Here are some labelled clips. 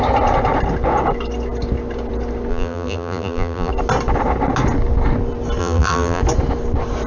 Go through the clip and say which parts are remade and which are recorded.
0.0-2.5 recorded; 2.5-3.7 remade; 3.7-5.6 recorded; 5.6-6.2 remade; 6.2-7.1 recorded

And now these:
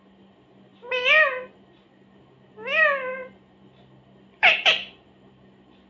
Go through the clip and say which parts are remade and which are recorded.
0.0-0.7 remade; 0.7-4.2 recorded; 4.2-5.9 remade

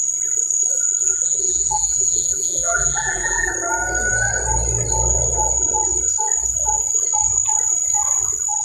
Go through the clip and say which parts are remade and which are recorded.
0.0-1.0 recorded; 1.0-3.5 remade; 3.5-8.6 recorded

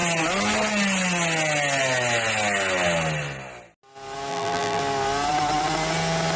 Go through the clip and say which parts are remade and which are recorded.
0.0-4.3 recorded; 4.3-4.8 remade; 4.8-6.4 recorded

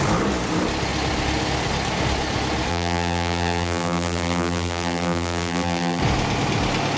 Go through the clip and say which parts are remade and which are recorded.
0.0-2.7 recorded; 2.7-6.0 remade; 6.0-7.0 recorded

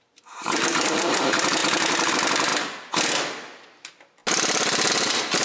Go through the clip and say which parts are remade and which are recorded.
0.0-2.5 remade; 2.5-3.8 recorded; 3.8-4.2 remade; 4.2-4.9 recorded; 4.9-5.4 remade